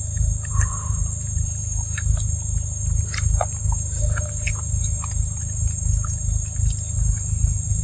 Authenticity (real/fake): real